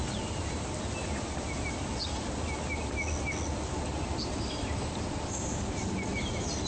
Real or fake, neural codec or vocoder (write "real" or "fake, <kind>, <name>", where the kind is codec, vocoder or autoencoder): real